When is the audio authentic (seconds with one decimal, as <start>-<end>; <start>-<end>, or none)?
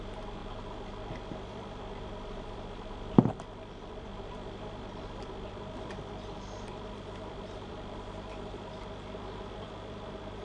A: 0.4-1.1